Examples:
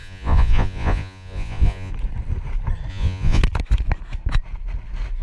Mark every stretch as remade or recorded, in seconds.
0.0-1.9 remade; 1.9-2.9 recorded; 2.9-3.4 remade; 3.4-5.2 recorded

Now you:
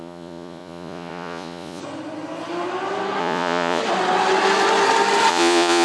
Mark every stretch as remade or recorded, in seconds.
0.0-1.8 remade; 1.8-3.2 recorded; 3.2-3.8 remade; 3.8-5.3 recorded; 5.3-5.8 remade

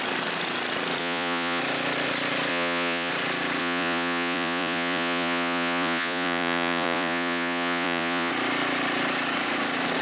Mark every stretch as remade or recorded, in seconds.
0.0-1.0 recorded; 1.0-1.6 remade; 1.6-2.5 recorded; 2.5-3.1 remade; 3.1-3.6 recorded; 3.6-8.3 remade; 8.3-10.0 recorded

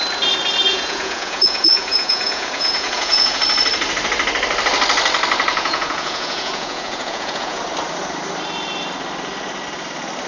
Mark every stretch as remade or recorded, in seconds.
0.0-0.7 recorded; 0.7-3.4 remade; 3.4-5.5 recorded; 5.5-7.6 remade; 7.6-10.3 recorded

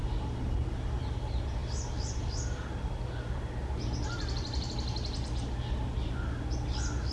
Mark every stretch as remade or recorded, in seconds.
0.0-7.1 recorded

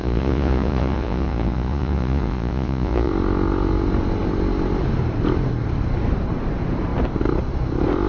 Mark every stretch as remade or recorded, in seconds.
0.0-3.1 remade; 3.1-8.1 recorded